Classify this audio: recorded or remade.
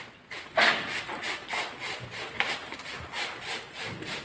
recorded